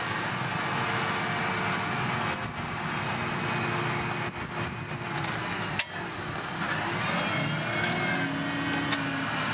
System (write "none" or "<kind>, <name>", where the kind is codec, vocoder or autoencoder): none